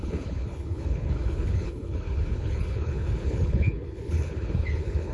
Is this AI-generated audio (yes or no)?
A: yes